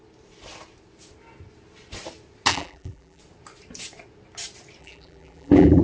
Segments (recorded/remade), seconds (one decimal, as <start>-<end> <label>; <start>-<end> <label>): 0.0-2.5 recorded; 2.5-3.2 remade; 3.2-4.8 recorded; 4.8-5.8 remade